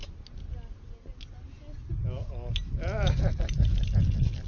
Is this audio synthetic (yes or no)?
no